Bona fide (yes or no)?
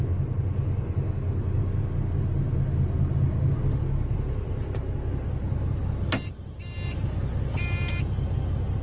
yes